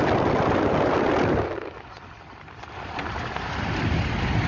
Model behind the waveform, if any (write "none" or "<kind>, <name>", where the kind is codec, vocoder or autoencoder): none